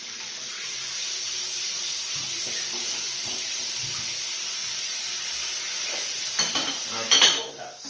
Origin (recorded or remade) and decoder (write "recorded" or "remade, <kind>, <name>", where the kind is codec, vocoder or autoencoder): remade, vocoder, BigVGAN v2